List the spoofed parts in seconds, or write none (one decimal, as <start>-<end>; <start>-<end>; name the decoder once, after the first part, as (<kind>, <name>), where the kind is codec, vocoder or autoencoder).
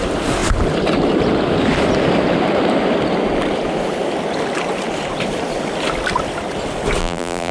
7.0-7.5 (vocoder, BigVGAN v2)